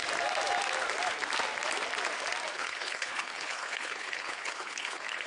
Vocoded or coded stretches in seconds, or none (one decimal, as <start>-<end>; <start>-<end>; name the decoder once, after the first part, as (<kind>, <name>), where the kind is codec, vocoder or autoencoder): 2.5-5.3 (codec, HILCodec)